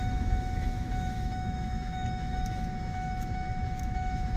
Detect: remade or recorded remade